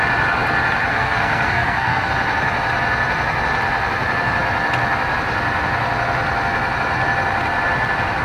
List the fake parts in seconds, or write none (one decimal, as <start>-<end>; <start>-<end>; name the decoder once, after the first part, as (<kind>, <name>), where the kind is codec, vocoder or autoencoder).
0.9-2.1 (codec, SNAC)